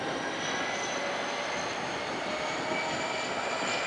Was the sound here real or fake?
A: real